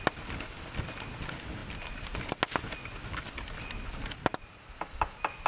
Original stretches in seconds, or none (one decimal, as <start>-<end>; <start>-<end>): 0.0-5.5